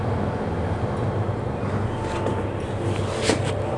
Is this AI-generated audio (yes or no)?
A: no